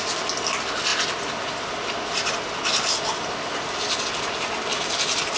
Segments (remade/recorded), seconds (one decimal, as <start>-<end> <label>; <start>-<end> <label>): 0.0-5.4 recorded